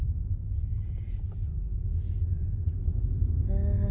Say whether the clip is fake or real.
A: real